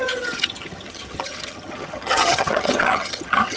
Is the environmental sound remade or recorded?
remade